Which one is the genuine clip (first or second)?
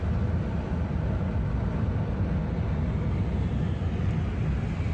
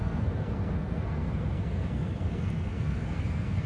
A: first